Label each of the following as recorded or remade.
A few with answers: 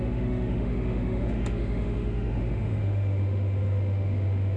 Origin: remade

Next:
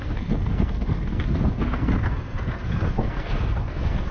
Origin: remade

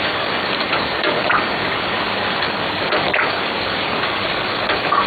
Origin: remade